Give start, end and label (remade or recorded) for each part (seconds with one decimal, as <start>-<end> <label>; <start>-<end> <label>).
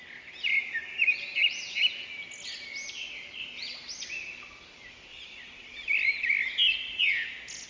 0.0-5.1 recorded; 5.1-5.7 remade; 5.7-7.7 recorded